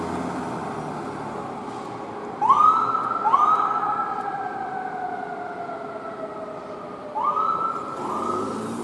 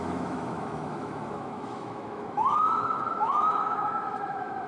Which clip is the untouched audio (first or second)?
first